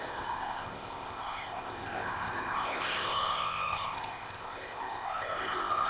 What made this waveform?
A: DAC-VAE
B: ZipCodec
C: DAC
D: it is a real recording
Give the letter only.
B